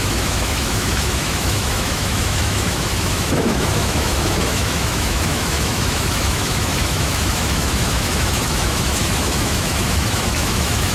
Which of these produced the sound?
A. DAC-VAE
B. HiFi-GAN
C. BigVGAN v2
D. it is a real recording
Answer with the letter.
A